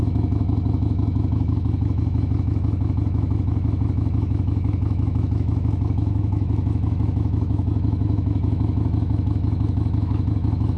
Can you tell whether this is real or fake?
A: fake